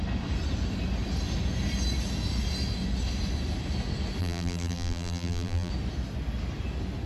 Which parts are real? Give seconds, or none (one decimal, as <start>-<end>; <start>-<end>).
0.0-4.2; 5.7-7.1